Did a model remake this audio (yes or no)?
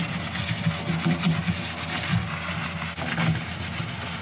no